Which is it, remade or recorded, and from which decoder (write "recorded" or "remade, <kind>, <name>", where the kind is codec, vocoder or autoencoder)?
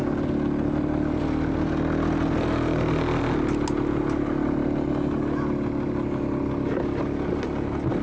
recorded